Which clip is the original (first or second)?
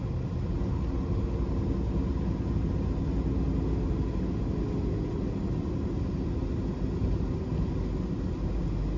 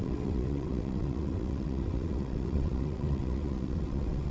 first